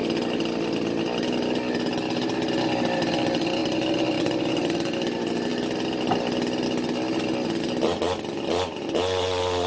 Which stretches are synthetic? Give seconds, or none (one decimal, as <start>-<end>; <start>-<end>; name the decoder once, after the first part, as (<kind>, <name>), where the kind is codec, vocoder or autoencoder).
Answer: none